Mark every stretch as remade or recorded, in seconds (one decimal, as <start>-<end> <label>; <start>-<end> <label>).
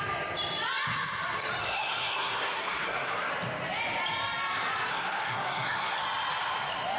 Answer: 0.0-1.6 recorded; 1.6-3.3 remade; 3.3-4.9 recorded; 4.9-6.0 remade; 6.0-7.0 recorded